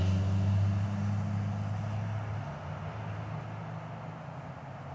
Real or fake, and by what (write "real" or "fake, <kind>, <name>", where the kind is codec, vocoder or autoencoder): real